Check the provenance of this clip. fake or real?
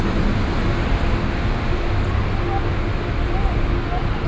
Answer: real